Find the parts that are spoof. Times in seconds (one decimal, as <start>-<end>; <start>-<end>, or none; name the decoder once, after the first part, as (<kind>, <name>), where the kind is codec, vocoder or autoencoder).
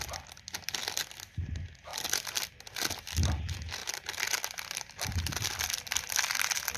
none